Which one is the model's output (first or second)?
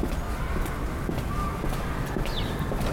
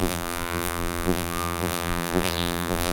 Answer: second